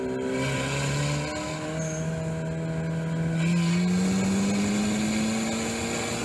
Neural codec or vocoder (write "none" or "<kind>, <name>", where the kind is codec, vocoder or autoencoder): none